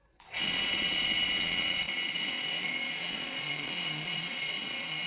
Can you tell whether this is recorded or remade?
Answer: remade